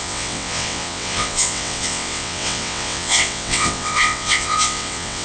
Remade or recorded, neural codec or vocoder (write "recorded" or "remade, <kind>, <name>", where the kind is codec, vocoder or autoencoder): remade, vocoder, WaveNeXt